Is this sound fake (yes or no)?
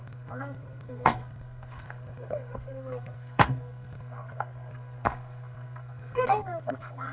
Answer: yes